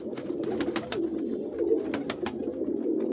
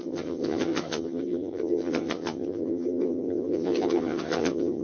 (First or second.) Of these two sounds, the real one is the first